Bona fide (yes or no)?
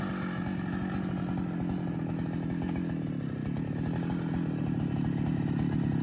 yes